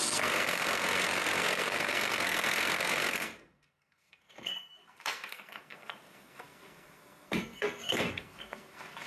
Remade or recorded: remade